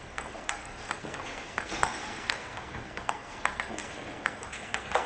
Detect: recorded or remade remade